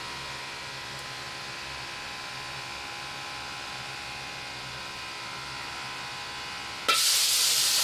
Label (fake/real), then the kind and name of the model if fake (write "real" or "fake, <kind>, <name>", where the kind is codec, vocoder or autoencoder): real